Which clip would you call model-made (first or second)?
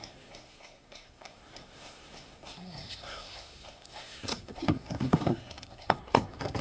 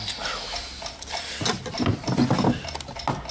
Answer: first